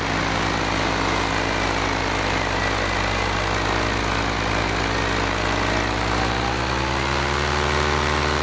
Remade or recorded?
recorded